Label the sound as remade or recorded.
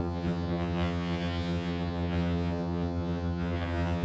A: remade